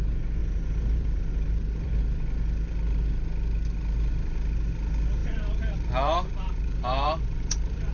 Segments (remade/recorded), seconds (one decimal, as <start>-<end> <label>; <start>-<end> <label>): 0.0-0.4 recorded; 0.4-2.0 remade; 2.0-5.2 recorded; 5.2-7.9 remade